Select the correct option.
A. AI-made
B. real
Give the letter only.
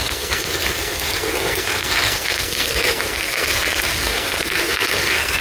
A